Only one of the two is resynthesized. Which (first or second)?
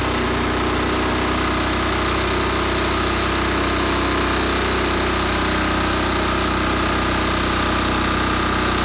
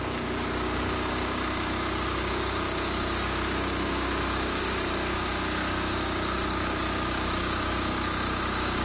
second